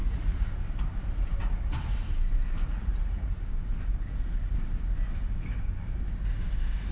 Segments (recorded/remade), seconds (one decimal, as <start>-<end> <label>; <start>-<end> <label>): 0.0-0.5 remade; 0.5-2.7 recorded; 2.7-3.4 remade; 3.4-6.9 recorded